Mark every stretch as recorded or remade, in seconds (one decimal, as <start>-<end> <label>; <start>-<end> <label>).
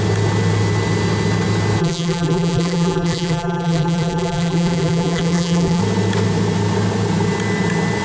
0.0-1.8 recorded; 1.8-5.8 remade; 5.8-8.0 recorded